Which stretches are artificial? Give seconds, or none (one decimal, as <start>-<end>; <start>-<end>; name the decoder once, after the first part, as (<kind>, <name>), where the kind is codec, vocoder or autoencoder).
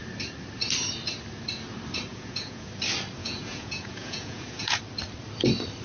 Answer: 2.1-2.7 (vocoder, Vocos); 3.2-4.8